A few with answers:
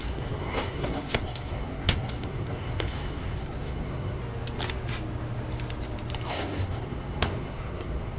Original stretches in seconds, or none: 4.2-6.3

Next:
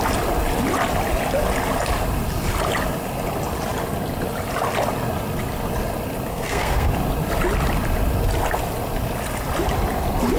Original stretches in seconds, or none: 0.0-6.3; 6.9-10.4

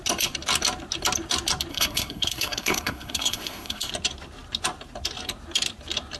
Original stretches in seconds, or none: 0.0-1.7; 3.9-6.2

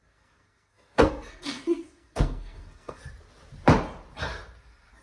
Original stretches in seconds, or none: 3.0-5.0

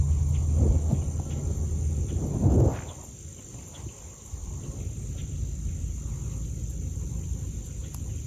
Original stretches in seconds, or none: 0.0-8.3